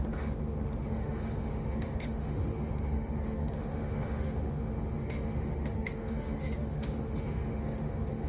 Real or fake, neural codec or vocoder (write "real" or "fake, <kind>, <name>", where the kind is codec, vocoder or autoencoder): fake, autoencoder, DAC-VAE